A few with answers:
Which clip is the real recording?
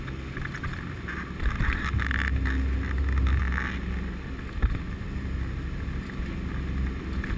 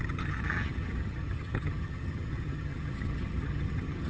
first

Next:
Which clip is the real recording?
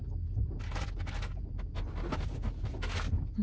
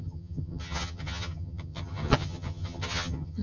first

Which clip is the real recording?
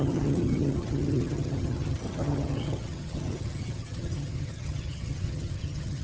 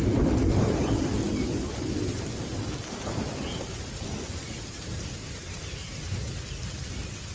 second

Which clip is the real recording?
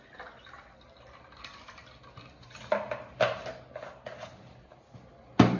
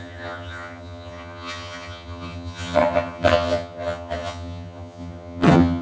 first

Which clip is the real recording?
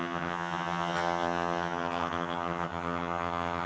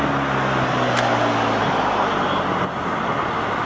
second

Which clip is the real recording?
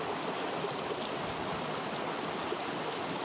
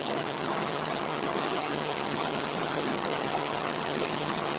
first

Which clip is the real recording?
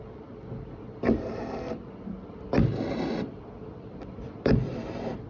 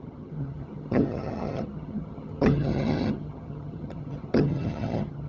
first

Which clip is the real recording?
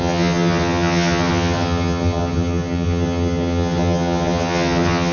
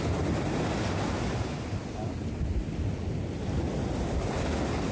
second